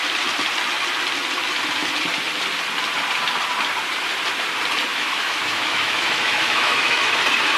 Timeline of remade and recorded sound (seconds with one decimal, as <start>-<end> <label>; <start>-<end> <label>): 0.0-4.9 recorded; 4.9-7.1 remade; 7.1-7.6 recorded